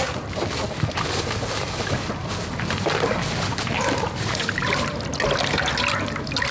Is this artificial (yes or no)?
no